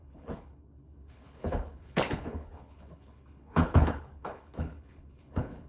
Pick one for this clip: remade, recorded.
remade